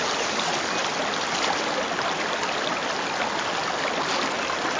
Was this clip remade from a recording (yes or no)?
no